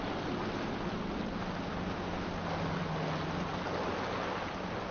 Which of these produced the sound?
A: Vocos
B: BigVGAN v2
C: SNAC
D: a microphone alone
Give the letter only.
D